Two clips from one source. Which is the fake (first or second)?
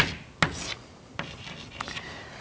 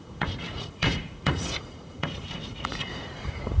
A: second